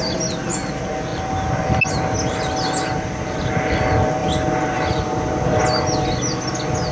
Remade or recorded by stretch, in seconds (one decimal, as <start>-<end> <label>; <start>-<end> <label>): 0.0-6.9 recorded